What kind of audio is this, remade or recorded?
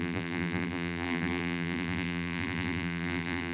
remade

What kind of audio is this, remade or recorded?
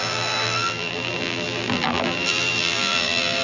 remade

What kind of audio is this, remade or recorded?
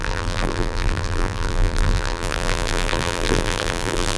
remade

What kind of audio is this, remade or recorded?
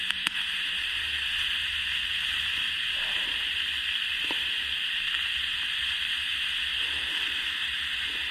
remade